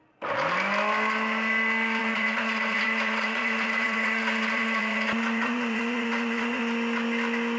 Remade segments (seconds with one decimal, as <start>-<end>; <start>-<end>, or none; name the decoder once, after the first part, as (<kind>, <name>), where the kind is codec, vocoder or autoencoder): 2.0-6.6 (vocoder, Vocos)